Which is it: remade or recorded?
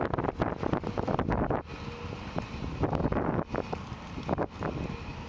recorded